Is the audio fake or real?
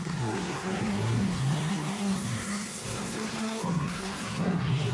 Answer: fake